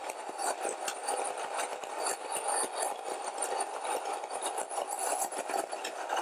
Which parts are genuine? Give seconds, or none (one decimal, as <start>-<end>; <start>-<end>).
0.0-6.2